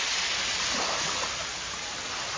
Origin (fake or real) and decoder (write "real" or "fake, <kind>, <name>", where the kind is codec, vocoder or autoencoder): real